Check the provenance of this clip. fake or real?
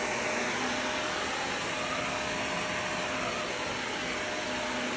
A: real